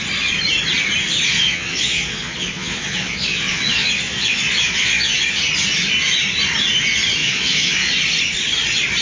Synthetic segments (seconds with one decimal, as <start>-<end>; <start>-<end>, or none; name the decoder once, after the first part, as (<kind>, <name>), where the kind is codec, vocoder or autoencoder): 1.3-5.4 (vocoder, Vocos); 7.2-7.9